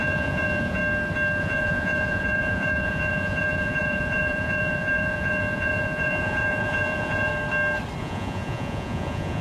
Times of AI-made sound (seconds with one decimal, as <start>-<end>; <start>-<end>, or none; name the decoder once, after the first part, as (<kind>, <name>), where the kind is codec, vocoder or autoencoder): 0.0-0.8 (vocoder, Vocos); 1.4-7.3; 8.0-9.4